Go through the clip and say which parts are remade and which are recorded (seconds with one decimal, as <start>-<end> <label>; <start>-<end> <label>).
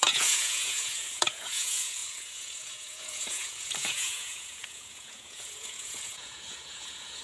0.0-7.2 remade